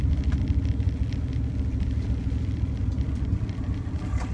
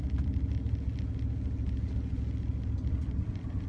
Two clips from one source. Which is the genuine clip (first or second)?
second